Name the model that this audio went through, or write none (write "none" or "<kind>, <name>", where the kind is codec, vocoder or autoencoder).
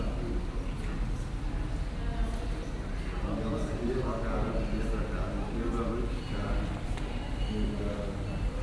none